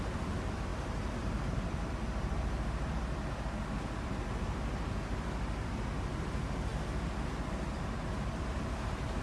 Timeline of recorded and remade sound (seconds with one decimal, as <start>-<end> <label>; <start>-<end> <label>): 0.0-9.2 remade